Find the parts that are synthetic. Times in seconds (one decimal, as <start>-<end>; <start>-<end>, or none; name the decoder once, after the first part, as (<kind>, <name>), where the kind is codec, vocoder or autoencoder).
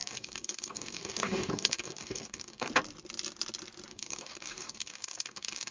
0.0-2.7 (codec, DAC); 3.9-5.7